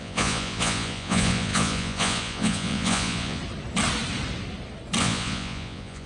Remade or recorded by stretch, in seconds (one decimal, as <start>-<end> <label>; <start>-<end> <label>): 0.0-3.4 remade; 3.4-5.0 recorded; 5.0-6.1 remade